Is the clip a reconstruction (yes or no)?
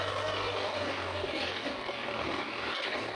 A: yes